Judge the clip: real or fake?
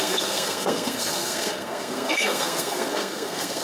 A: fake